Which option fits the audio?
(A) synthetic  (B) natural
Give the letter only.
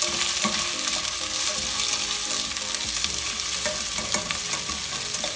B